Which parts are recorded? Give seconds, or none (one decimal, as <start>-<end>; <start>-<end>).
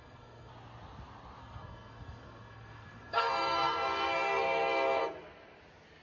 0.5-1.4; 5.0-6.0